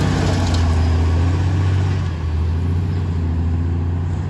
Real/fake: real